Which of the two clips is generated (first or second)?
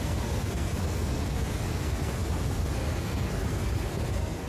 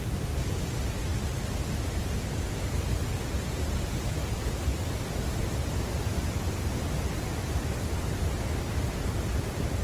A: first